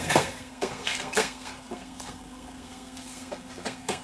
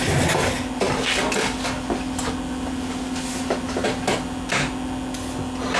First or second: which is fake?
first